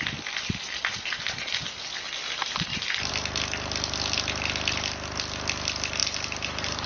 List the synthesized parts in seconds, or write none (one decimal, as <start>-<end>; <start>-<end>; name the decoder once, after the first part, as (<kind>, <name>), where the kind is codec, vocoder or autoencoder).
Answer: 6.0-6.9 (vocoder, BigVGAN v2)